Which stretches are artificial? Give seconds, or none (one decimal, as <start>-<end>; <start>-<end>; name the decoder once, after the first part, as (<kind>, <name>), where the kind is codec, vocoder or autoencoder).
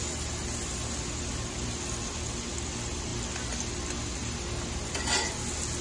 none